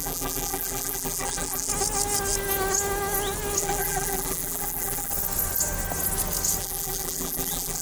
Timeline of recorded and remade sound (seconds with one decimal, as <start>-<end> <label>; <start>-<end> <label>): 0.0-1.7 remade; 1.7-3.6 recorded; 3.6-5.1 remade; 5.1-6.6 recorded; 6.6-7.8 remade